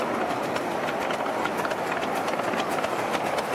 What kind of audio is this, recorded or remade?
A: recorded